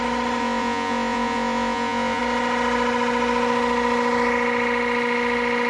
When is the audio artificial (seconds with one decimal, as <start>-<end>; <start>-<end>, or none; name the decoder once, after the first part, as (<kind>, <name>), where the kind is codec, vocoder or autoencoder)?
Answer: 0.4-2.2 (vocoder, Vocos)